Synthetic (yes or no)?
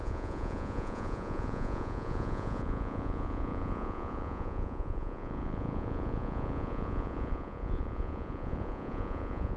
yes